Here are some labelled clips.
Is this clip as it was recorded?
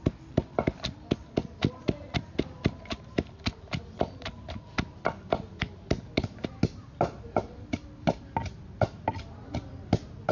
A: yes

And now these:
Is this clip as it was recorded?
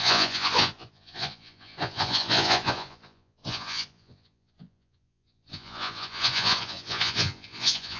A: no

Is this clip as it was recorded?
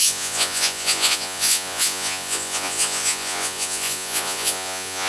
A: no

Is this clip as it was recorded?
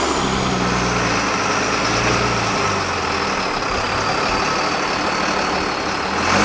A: yes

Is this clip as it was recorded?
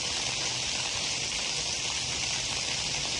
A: yes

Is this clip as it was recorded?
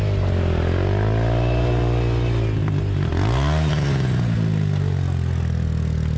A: yes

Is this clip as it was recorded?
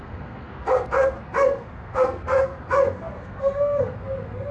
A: no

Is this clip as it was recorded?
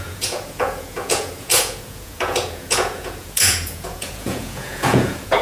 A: no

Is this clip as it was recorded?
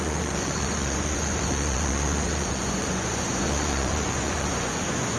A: no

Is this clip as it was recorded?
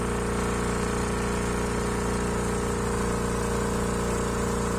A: yes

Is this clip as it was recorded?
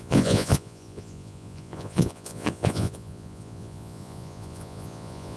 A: no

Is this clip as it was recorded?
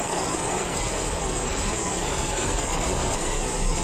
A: no